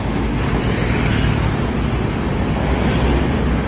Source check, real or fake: real